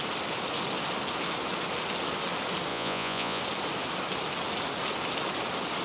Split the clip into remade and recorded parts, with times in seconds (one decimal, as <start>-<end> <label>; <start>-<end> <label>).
0.0-2.7 recorded; 2.7-3.4 remade; 3.4-5.8 recorded